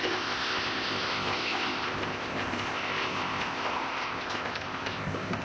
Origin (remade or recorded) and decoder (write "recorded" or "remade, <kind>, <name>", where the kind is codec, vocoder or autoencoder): remade, codec, ZipCodec